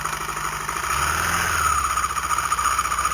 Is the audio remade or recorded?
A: recorded